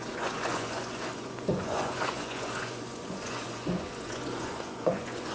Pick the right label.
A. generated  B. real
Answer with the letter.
A